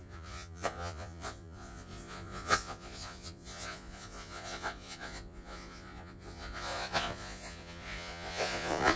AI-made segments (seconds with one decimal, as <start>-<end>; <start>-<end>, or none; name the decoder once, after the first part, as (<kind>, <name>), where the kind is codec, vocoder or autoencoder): 0.0-9.0 (vocoder, Vocos)

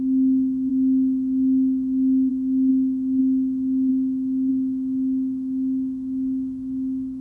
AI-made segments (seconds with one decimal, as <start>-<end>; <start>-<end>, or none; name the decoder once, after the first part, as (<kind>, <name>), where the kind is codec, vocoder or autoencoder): none